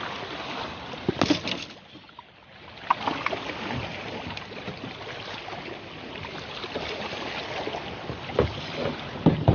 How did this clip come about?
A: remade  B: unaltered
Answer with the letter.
B